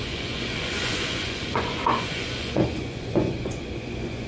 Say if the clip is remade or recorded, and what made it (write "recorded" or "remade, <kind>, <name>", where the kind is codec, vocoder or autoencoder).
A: remade, vocoder, Vocos